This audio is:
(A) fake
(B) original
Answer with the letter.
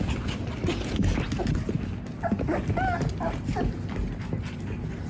B